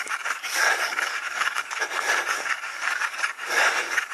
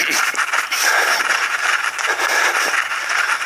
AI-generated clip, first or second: first